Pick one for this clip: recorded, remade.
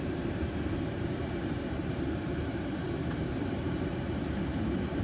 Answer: remade